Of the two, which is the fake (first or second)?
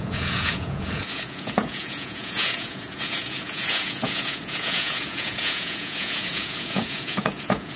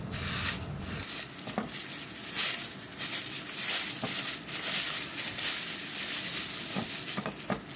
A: first